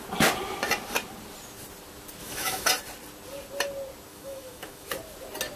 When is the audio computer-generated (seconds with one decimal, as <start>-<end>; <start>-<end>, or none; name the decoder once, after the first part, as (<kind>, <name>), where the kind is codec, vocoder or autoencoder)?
2.2-2.7 (autoencoder, DAC-VAE); 4.1-4.9